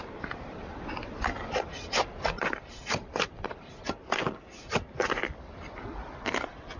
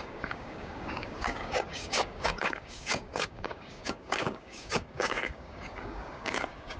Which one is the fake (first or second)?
second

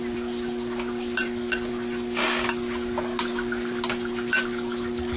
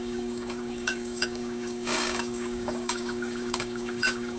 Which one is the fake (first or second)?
second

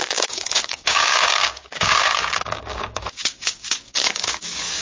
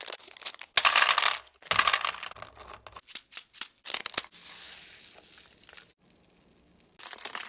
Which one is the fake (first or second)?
first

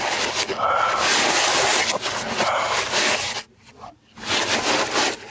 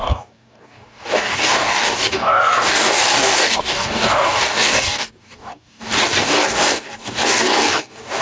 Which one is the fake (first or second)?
second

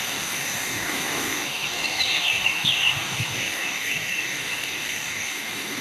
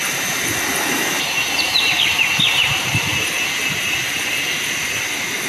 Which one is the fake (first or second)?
first